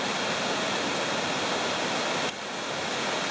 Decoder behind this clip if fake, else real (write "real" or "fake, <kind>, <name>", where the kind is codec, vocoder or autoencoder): real